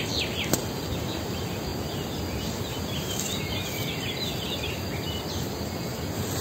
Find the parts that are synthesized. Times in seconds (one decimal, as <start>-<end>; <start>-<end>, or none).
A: none